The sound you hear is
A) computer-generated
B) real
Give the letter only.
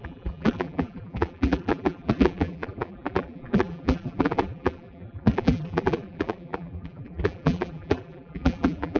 A